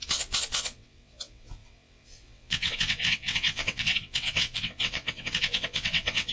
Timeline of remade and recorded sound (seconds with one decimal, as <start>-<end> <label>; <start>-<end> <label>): 0.0-6.3 remade